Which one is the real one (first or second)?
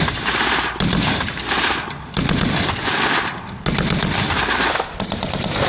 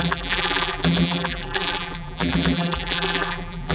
first